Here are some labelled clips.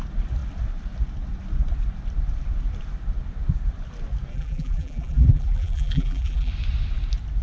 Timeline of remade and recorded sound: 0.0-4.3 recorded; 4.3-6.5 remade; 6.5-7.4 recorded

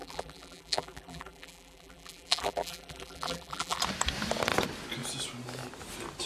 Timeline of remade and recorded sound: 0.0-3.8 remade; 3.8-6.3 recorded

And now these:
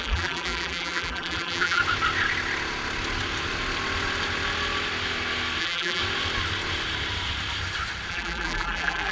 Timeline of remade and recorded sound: 0.0-1.8 remade; 1.8-5.6 recorded; 5.6-6.0 remade; 6.0-8.1 recorded; 8.1-9.1 remade